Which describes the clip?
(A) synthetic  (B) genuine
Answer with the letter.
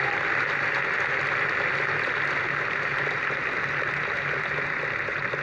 B